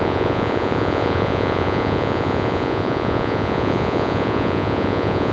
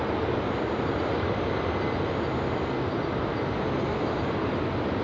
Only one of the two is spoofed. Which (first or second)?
first